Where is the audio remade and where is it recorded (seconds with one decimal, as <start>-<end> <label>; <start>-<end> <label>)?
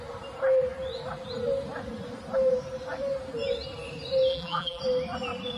0.0-4.3 recorded; 4.3-4.8 remade; 4.8-5.6 recorded